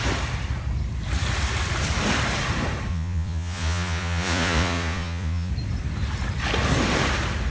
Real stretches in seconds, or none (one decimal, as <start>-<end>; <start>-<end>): 0.0-2.9; 5.5-7.5